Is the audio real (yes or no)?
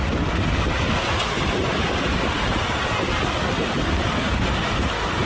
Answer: yes